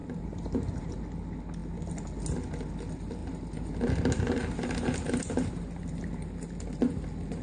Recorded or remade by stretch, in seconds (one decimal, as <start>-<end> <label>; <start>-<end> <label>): 0.0-0.9 remade; 0.9-3.2 recorded; 3.2-5.8 remade; 5.8-7.4 recorded